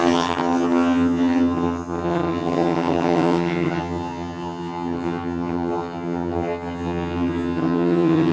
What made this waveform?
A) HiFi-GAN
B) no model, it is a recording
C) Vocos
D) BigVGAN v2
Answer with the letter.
A